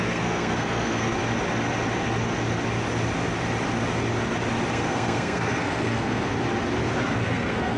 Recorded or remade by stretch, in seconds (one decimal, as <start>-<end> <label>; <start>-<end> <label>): 0.0-1.1 remade; 1.1-4.7 recorded; 4.7-6.3 remade; 6.3-7.0 recorded; 7.0-7.8 remade